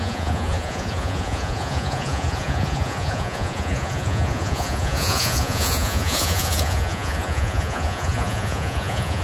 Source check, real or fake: fake